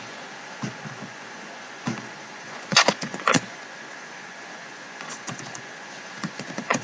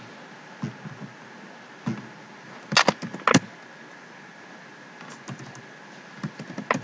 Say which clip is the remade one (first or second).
first